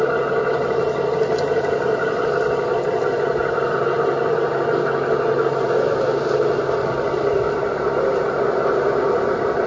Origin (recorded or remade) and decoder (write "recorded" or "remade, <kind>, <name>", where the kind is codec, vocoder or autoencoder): recorded